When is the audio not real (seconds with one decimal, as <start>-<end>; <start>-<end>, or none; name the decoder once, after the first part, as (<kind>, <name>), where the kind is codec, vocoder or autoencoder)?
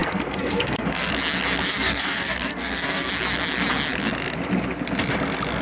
0.0-1.1 (codec, SNAC); 1.7-3.1